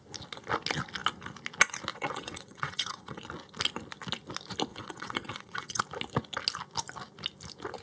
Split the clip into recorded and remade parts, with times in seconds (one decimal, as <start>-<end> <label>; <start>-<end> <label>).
0.0-1.9 recorded; 1.9-3.2 remade; 3.2-4.7 recorded; 4.7-5.8 remade; 5.8-7.8 recorded